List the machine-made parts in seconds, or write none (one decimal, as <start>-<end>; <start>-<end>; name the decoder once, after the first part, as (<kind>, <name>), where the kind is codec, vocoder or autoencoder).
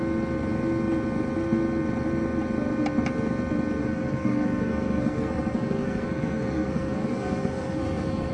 3.8-8.3 (codec, SNAC)